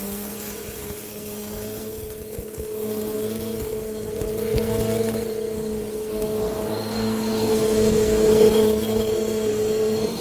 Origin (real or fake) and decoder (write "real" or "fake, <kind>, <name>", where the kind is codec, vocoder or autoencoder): fake, codec, SNAC